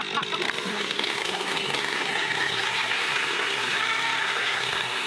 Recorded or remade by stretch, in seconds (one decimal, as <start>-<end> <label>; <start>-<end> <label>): 0.0-0.7 recorded; 0.7-3.8 remade; 3.8-4.2 recorded; 4.2-5.1 remade